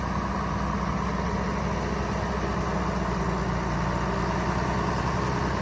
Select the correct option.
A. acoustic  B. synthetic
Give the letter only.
A